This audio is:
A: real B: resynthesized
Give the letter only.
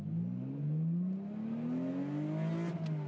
A